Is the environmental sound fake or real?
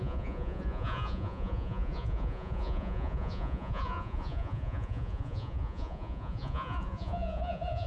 fake